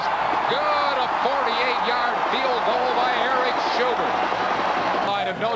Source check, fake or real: real